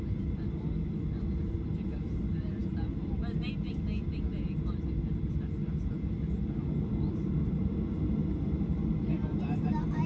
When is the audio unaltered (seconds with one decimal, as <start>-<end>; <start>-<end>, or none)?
0.0-10.1